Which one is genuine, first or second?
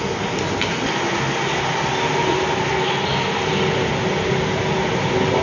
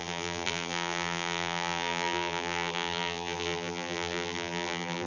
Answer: first